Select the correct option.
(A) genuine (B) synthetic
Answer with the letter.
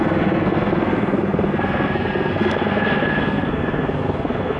B